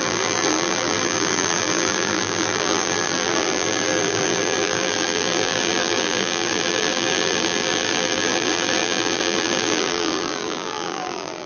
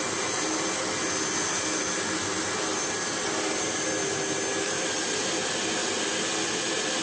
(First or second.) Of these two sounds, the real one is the second